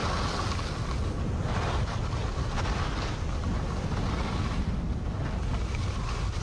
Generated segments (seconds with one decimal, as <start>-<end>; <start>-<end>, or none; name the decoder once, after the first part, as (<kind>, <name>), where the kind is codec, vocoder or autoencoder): none

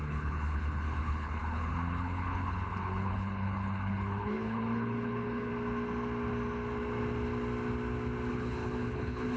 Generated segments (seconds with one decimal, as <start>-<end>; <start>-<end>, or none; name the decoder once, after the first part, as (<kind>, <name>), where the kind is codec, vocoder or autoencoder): 0.0-5.5 (codec, HILCodec); 8.3-9.4

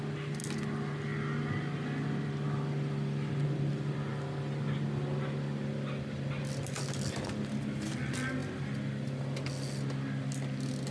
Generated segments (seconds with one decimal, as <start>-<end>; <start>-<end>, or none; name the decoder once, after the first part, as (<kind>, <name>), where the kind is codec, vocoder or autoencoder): none

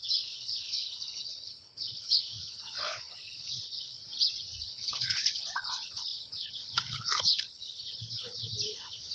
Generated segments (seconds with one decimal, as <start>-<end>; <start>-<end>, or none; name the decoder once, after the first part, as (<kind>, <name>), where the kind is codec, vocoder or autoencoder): 0.0-4.0 (codec, HILCodec); 4.6-9.1